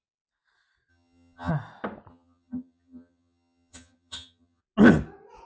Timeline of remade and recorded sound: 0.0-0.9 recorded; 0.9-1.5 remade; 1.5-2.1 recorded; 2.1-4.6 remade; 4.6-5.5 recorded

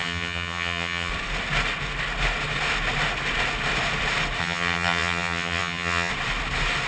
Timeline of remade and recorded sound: 0.0-1.1 remade; 1.1-4.4 recorded; 4.4-6.1 remade; 6.1-6.9 recorded

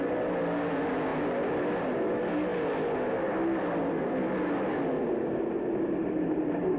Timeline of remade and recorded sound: 0.0-6.8 recorded

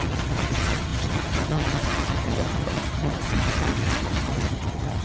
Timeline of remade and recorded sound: 0.0-5.0 remade

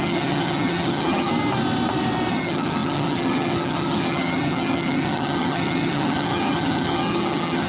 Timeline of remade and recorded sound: 0.0-1.3 remade; 1.3-2.3 recorded; 2.3-7.7 remade